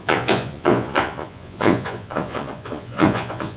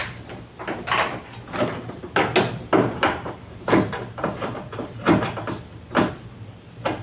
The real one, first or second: second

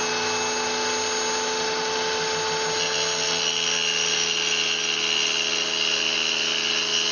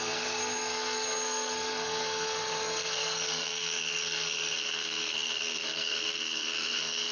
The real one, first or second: first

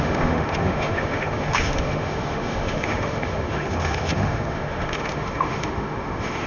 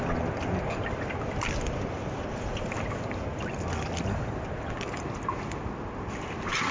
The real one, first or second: second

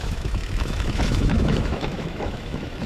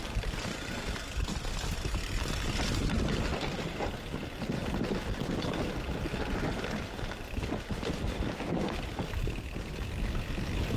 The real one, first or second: second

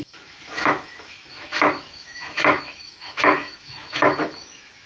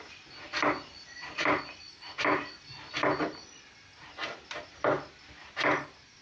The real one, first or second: second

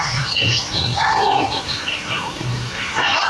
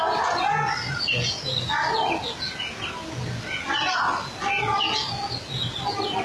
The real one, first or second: second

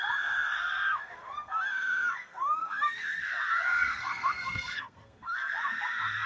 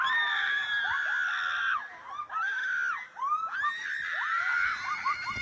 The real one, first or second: second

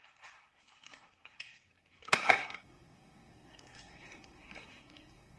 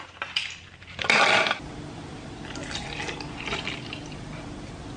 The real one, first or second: second